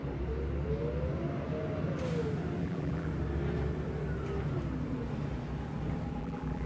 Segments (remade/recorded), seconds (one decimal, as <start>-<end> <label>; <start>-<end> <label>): 0.0-2.6 recorded; 2.6-3.1 remade; 3.1-6.2 recorded; 6.2-6.7 remade